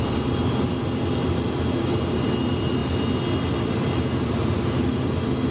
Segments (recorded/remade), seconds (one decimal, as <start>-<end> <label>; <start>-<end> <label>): 0.0-5.5 recorded